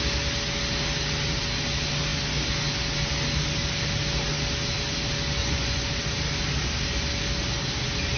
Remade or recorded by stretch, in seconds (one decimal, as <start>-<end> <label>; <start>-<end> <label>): 0.0-5.4 recorded; 5.4-5.9 remade; 5.9-8.2 recorded